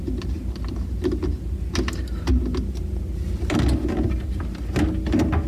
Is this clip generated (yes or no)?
no